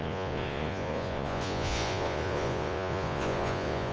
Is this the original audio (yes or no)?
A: no